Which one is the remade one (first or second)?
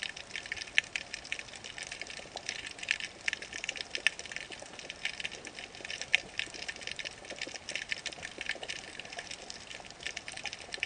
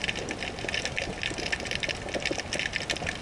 first